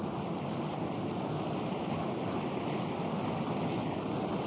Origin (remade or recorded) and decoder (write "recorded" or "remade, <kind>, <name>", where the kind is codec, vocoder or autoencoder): recorded